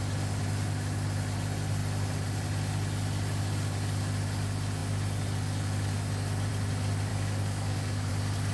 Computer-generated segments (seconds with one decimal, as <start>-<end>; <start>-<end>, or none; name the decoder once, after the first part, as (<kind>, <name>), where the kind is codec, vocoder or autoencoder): 7.1-8.1 (codec, DAC)